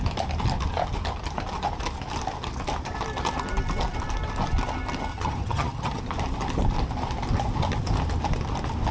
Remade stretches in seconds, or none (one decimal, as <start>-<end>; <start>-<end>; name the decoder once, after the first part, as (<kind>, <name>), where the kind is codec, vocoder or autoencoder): 5.1-6.0 (vocoder, HiFi-GAN)